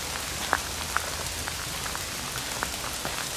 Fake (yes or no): no